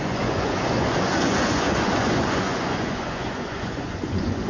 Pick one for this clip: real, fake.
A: fake